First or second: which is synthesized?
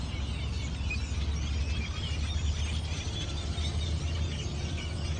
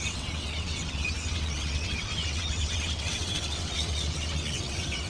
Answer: second